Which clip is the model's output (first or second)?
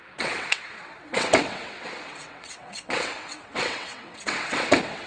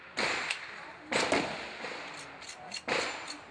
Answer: first